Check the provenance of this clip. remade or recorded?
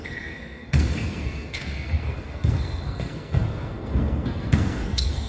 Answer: remade